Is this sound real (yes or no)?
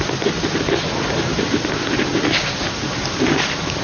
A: yes